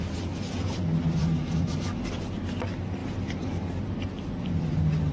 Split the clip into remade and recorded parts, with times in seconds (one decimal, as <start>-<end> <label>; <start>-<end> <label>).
0.0-1.2 recorded; 1.2-2.0 remade; 2.0-5.1 recorded